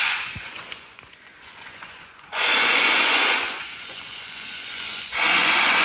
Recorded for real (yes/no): no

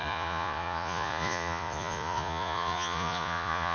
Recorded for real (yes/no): no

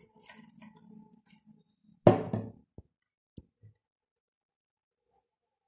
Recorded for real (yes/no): yes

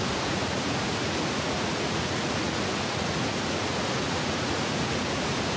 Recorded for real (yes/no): no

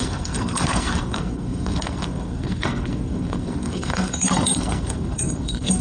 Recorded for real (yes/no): no